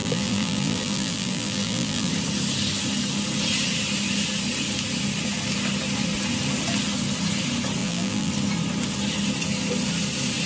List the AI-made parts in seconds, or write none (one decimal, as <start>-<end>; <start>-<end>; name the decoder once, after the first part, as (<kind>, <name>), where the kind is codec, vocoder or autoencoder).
0.0-2.1 (vocoder, BigVGAN v2); 7.8-8.3